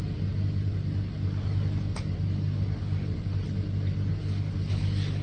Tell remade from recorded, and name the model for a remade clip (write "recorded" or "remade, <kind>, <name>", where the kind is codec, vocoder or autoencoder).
recorded